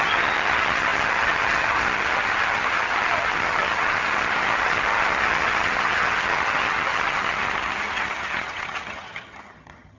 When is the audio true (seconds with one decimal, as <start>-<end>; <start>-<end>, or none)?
none